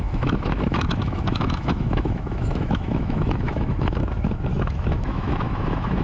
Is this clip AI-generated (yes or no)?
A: yes